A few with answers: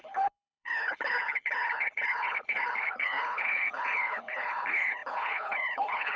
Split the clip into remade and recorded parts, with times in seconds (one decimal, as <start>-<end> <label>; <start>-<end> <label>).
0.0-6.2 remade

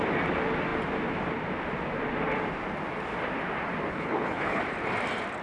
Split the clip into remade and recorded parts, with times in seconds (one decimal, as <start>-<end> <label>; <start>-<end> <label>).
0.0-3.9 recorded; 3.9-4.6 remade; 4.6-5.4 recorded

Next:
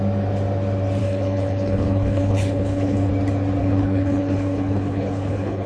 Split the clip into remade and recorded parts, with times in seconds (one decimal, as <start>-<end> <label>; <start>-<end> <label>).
0.0-1.0 recorded; 1.0-3.1 remade; 3.1-3.6 recorded; 3.6-5.7 remade